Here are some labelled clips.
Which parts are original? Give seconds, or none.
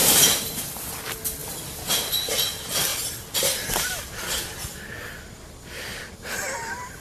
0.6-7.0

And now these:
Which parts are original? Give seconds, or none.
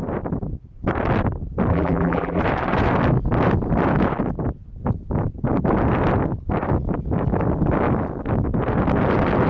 0.0-1.7; 2.4-9.5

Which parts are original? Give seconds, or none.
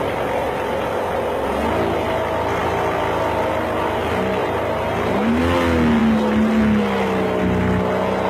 0.0-4.4; 5.4-8.3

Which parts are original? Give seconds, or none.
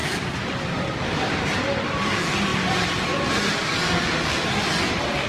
0.0-1.1; 1.6-5.3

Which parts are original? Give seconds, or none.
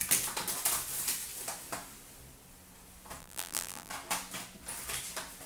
0.0-3.2; 3.9-5.5